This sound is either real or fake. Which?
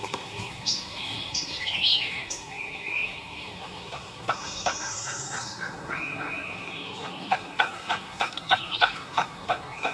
fake